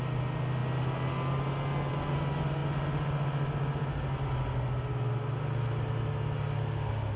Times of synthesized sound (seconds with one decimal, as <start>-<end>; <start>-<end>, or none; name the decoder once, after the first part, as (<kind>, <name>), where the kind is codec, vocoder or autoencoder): none